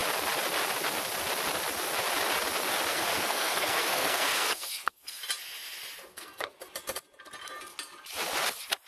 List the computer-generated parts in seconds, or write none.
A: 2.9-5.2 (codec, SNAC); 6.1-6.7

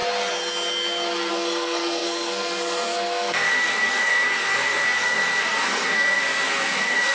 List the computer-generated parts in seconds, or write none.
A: 1.3-7.1 (codec, SNAC)

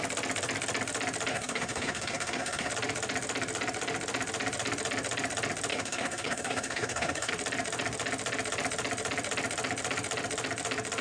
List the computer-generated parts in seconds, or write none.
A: 1.3-2.7 (codec, SNAC); 5.7-7.3

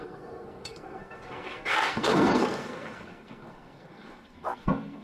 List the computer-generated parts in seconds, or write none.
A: 0.0-5.0 (codec, SNAC)

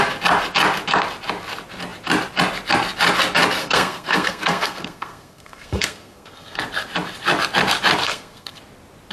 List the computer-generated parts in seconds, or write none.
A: 3.6-6.6 (codec, SNAC); 8.0-8.6

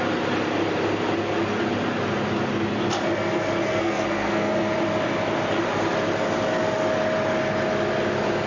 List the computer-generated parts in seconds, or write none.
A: 3.7-4.5 (codec, SNAC)

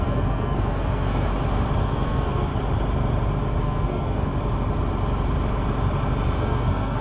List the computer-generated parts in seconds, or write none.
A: 0.0-1.3 (codec, SNAC); 1.8-2.5; 3.6-4.3; 6.4-7.0

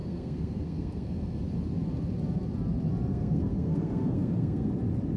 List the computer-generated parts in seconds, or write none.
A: 0.0-1.4 (codec, SNAC); 3.1-4.7